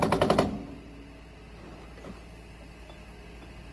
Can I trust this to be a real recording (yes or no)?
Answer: yes